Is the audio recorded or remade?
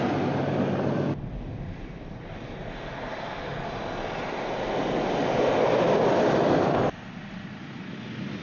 recorded